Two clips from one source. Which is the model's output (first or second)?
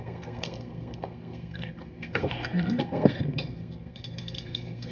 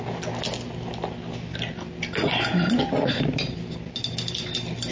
first